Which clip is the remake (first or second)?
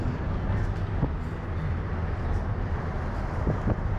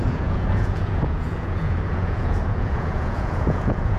second